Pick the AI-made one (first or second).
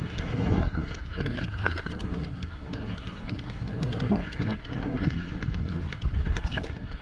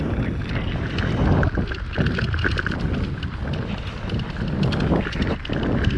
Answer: first